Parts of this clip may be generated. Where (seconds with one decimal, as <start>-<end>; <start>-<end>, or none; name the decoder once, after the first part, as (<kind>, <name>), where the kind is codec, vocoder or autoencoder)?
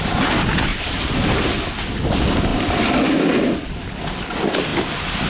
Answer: 0.7-1.4 (vocoder, BigVGAN v2)